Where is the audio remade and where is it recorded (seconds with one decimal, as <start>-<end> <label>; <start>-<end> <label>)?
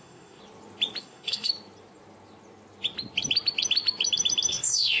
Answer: 0.0-0.4 remade; 0.4-1.0 recorded; 1.0-1.5 remade; 1.5-4.5 recorded; 4.5-5.0 remade